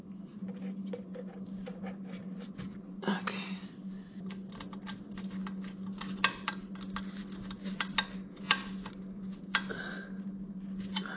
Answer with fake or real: real